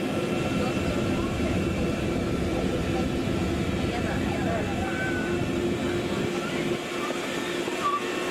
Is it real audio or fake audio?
real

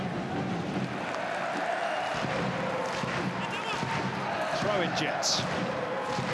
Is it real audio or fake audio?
real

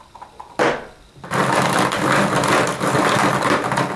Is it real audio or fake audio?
real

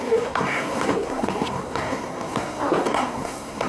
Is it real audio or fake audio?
fake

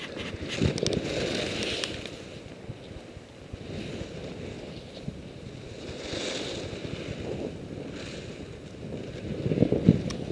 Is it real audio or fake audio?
real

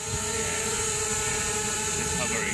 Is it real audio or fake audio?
fake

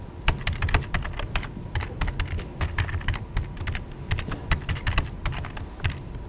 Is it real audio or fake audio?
real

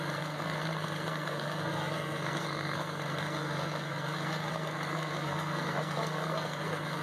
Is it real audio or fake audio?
fake